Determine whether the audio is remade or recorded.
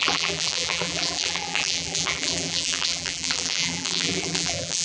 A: remade